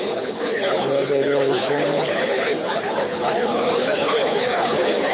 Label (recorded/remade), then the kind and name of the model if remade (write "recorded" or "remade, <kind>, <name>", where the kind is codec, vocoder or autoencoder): remade, codec, HILCodec